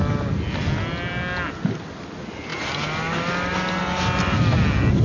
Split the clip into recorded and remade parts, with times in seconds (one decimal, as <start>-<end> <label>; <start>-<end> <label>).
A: 0.0-5.0 recorded